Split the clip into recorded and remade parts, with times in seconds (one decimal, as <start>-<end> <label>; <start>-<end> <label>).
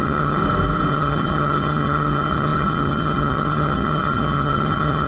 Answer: 0.0-0.4 remade; 0.4-0.9 recorded; 0.9-5.1 remade